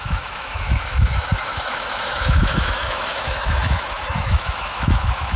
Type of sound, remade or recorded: remade